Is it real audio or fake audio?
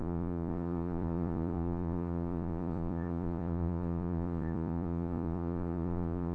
fake